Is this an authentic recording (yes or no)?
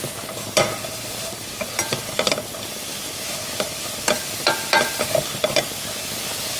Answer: yes